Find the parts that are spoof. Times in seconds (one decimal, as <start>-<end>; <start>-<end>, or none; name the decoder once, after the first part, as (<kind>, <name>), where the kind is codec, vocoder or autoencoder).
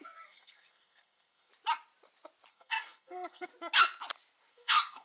0.0-1.5 (codec, SNAC); 2.5-3.5; 4.5-5.0